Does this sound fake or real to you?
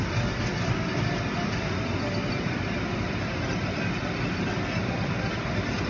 real